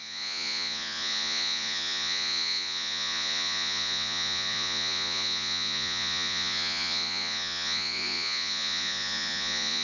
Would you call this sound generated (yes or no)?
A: yes